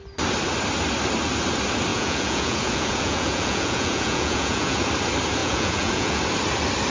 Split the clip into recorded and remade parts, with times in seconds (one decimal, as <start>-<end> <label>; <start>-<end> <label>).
0.0-1.9 recorded; 1.9-4.9 remade; 4.9-5.4 recorded; 5.4-6.2 remade; 6.2-6.9 recorded